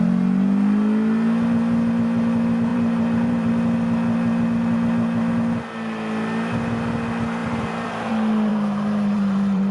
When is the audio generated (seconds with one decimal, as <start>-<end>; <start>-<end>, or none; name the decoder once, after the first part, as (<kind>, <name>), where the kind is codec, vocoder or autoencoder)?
2.7-3.5 (vocoder, BigVGAN v2); 7.4-8.1; 8.5-9.7

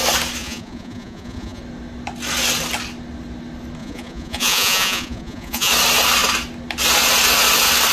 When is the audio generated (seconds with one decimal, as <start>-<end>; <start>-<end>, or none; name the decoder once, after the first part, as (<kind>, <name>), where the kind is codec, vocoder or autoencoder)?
0.4-1.6 (vocoder, Vocos); 3.8-5.7

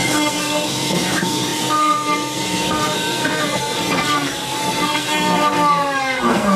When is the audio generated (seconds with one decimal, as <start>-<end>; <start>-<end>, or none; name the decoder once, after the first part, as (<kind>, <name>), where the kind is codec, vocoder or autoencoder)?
0.0-6.6 (codec, SNAC)

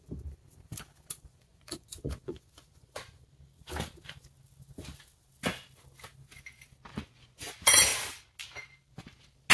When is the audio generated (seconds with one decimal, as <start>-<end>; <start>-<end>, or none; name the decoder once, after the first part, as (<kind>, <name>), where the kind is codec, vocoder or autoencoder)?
1.3-3.2 (vocoder, Vocos); 6.9-7.5

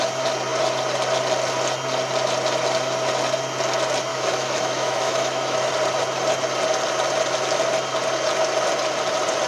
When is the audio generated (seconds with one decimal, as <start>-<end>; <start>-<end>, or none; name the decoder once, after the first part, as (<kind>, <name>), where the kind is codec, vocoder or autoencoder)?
4.1-5.7 (autoencoder, DAC-VAE)

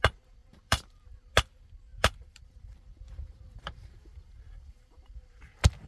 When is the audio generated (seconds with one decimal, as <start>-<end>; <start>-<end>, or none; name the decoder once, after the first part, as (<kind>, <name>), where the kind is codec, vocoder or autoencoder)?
0.4-1.2 (vocoder, BigVGAN v2); 1.9-5.4